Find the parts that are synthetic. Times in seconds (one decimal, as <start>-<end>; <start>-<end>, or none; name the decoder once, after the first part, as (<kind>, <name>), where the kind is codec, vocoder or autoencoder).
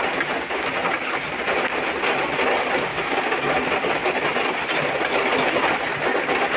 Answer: 2.9-3.4 (codec, DAC)